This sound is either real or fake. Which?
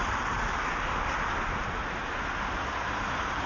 real